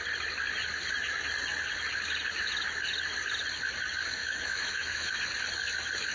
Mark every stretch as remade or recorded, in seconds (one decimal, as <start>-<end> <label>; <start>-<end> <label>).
0.0-4.2 recorded; 4.2-5.2 remade; 5.2-6.1 recorded